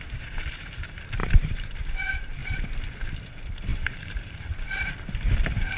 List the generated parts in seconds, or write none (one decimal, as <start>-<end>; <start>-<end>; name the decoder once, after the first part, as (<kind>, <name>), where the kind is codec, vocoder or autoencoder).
0.0-2.4 (vocoder, BigVGAN v2); 3.0-5.8

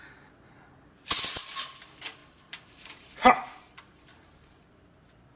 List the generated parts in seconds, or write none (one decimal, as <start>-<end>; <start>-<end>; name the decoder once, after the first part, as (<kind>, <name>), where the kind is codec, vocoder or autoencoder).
2.2-4.7 (vocoder, BigVGAN v2)

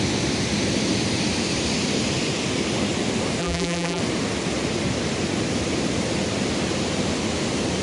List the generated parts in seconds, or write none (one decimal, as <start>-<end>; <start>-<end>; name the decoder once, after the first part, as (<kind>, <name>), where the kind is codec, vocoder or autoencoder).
3.4-4.0 (vocoder, BigVGAN v2)

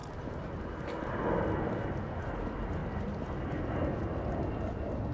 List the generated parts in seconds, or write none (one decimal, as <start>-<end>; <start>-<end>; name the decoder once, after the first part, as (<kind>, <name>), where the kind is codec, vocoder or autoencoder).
0.0-1.2 (vocoder, BigVGAN v2)

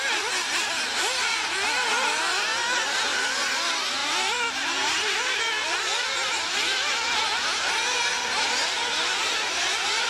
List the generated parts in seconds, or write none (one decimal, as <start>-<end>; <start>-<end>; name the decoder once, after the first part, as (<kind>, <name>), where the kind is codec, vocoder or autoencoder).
4.0-5.4 (vocoder, BigVGAN v2); 9.1-9.6

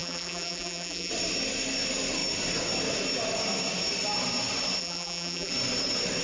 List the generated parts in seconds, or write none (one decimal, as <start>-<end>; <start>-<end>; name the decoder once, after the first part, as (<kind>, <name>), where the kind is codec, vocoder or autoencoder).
0.0-1.1 (vocoder, BigVGAN v2); 4.8-5.5

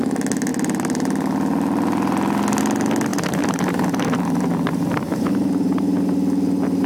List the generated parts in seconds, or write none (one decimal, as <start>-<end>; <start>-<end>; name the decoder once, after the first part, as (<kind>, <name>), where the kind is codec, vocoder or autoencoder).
3.1-5.8 (vocoder, BigVGAN v2)